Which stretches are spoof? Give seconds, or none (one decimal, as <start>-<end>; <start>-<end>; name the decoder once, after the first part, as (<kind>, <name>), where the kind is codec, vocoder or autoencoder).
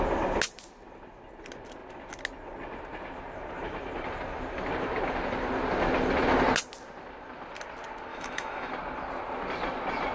8.1-8.7 (autoencoder, DAC-VAE)